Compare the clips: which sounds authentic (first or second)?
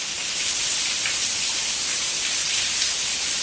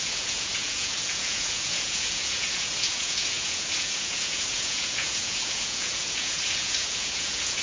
first